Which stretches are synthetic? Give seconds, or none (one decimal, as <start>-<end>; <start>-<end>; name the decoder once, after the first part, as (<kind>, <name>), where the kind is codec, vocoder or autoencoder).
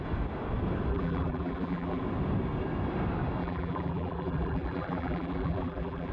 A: 0.9-2.0 (vocoder, BigVGAN v2); 3.4-6.1